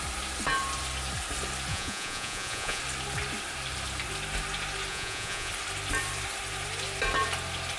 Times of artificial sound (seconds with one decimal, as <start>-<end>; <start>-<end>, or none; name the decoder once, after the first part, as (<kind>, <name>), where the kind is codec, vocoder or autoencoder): 1.7-2.8 (vocoder, Vocos); 4.9-5.5